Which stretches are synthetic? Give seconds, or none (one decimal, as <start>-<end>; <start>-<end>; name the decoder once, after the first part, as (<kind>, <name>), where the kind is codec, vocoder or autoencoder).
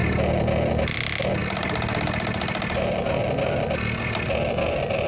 none